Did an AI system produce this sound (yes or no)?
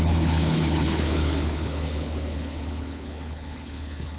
yes